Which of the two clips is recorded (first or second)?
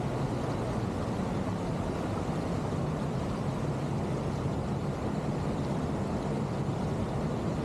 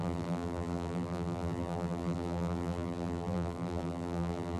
first